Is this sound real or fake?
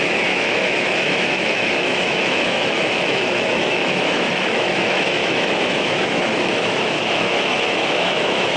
fake